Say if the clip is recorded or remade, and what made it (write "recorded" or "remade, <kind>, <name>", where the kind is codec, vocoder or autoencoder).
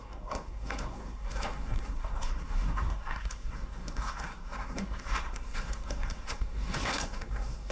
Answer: remade, codec, SNAC